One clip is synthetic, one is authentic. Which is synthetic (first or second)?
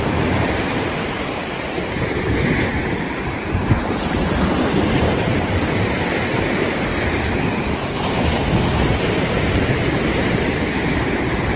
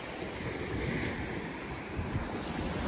first